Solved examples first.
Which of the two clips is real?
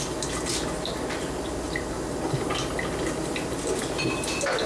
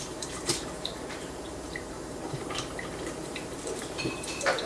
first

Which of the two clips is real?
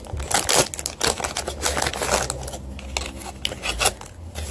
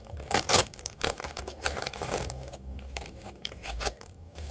first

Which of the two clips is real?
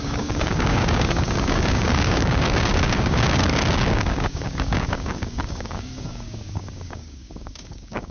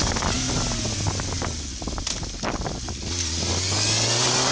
second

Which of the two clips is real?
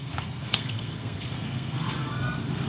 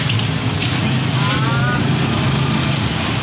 second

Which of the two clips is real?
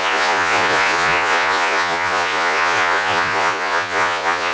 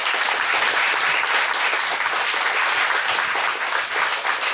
second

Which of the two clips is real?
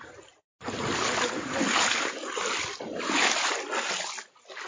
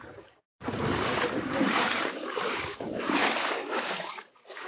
first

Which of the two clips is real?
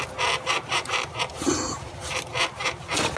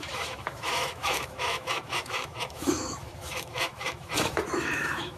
first